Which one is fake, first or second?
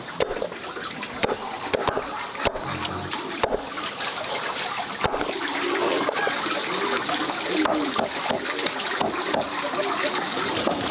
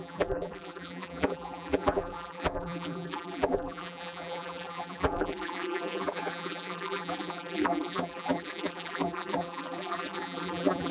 second